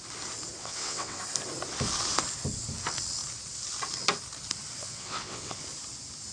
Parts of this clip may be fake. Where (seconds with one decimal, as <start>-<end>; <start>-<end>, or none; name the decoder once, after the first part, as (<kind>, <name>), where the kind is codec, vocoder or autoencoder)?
0.6-1.2 (vocoder, WaveNeXt); 4.8-5.6